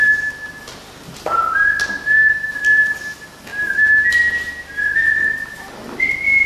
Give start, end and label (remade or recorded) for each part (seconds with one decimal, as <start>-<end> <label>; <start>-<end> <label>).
0.0-6.5 recorded